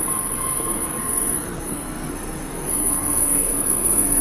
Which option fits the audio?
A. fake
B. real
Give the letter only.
A